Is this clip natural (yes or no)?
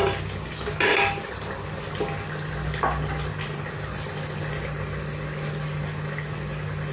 yes